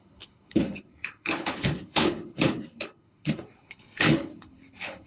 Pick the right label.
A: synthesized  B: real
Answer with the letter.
A